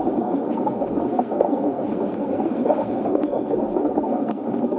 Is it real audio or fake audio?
fake